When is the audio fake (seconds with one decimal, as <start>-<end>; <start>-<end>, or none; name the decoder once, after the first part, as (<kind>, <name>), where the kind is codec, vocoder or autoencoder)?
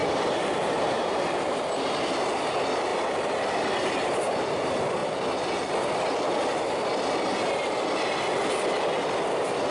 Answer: 0.0-1.5 (vocoder, BigVGAN v2)